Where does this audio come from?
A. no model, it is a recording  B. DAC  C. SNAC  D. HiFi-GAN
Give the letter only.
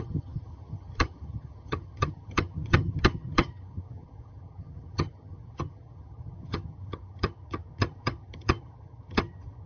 D